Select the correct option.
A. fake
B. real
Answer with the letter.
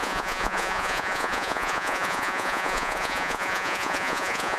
A